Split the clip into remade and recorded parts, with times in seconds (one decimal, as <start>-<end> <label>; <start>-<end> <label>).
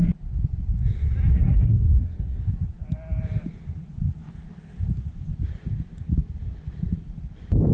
0.0-1.3 recorded; 1.3-2.4 remade; 2.4-7.7 recorded